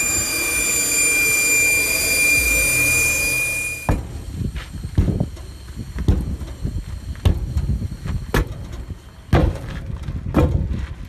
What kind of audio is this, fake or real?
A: real